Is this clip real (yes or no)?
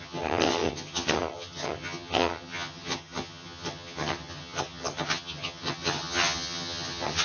no